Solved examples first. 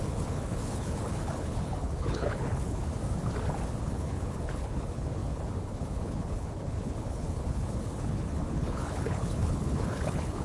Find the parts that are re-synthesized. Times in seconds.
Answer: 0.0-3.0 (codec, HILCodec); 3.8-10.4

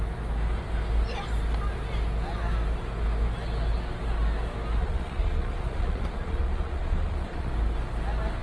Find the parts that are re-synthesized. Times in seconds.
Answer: 4.8-7.5 (vocoder, Vocos)

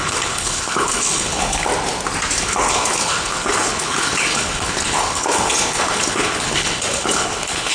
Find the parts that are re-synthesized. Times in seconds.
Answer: 0.0-1.7 (codec, HILCodec); 2.4-7.7

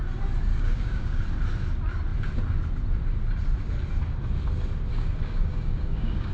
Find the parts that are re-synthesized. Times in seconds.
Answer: 0.5-1.2 (codec, DAC); 4.9-6.3

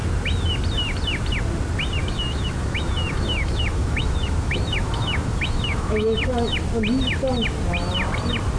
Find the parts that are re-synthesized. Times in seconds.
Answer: 2.0-6.6 (autoencoder, DAC-VAE)

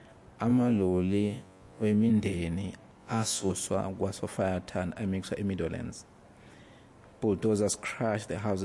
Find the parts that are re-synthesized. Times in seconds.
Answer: 0.5-2.1 (vocoder, Vocos); 3.0-3.5

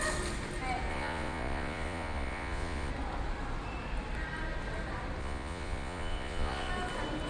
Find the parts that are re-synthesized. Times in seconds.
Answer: 0.9-2.9 (vocoder, Vocos); 5.2-6.7